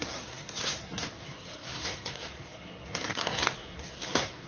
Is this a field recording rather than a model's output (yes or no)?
no